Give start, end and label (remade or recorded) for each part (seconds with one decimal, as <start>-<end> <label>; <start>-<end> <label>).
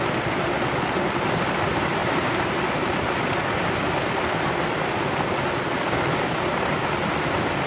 0.0-7.7 recorded